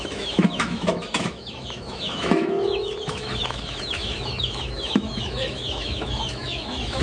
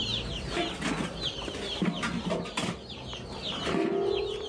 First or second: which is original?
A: second